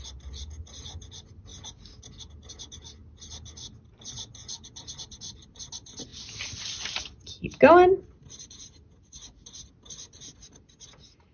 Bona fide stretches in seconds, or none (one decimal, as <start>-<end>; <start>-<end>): 0.0-11.3

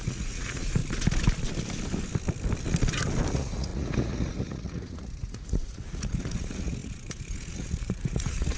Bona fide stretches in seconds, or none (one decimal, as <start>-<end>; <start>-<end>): 0.8-3.3

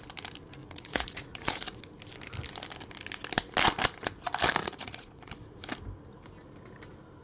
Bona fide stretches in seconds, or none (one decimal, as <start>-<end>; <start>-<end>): 0.0-0.6; 1.8-4.6; 5.3-7.2

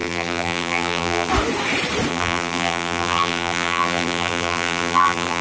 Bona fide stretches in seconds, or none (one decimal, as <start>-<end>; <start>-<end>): 1.3-2.1

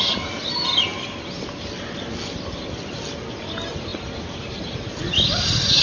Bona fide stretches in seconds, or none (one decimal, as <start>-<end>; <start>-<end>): 0.0-5.8

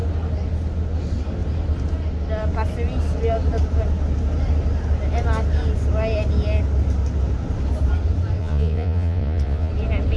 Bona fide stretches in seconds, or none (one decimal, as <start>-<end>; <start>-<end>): 0.0-8.4; 9.7-10.2

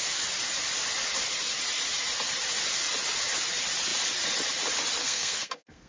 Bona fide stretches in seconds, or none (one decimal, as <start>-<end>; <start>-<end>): 0.0-5.0